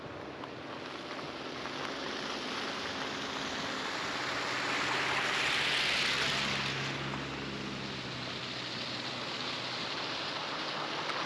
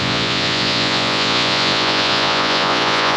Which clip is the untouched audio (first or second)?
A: first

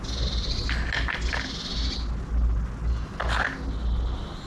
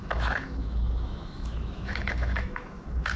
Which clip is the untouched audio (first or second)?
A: first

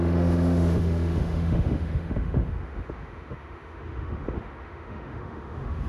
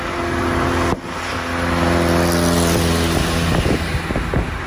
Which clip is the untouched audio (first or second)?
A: second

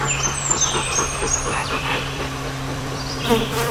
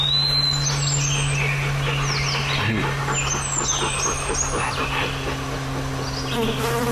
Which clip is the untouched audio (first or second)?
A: second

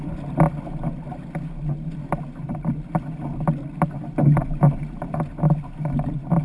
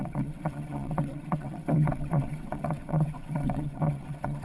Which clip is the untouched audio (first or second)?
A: first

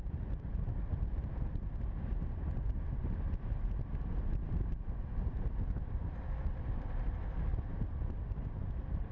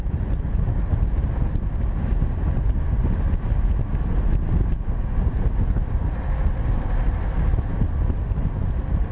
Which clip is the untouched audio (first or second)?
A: second